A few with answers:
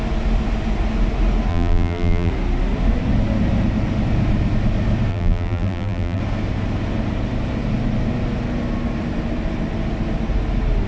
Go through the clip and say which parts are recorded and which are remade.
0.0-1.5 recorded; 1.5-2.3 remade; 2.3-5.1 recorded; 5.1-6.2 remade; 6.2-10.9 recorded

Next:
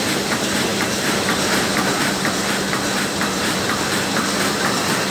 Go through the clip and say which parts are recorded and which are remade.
0.0-5.1 remade

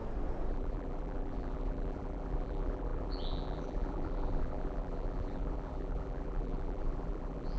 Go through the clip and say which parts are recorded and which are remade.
0.0-0.5 recorded; 0.5-7.6 remade

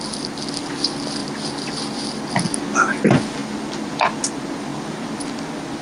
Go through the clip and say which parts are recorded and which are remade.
0.0-1.2 recorded; 1.2-2.3 remade; 2.3-3.4 recorded; 3.4-4.2 remade; 4.2-4.7 recorded; 4.7-5.2 remade; 5.2-5.8 recorded

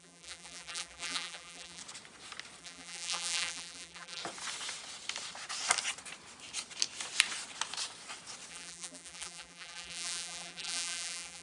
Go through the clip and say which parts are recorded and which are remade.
0.0-1.8 remade; 1.8-2.6 recorded; 2.6-4.2 remade; 4.2-8.5 recorded; 8.5-11.4 remade